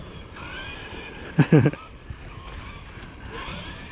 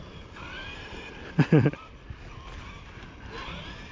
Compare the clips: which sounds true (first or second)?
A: second